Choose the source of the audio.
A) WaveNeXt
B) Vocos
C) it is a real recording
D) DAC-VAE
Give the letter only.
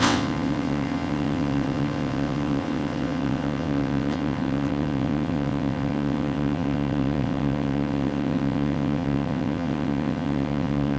A